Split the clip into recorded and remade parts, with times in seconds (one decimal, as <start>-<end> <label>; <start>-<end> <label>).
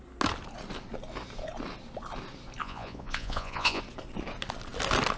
0.0-2.6 recorded; 2.6-3.8 remade; 3.8-5.2 recorded